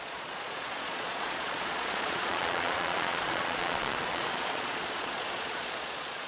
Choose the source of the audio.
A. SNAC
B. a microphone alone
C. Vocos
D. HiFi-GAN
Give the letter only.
C